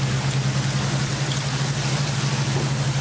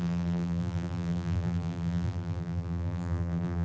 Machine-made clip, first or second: second